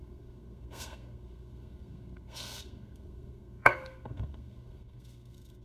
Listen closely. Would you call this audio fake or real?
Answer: fake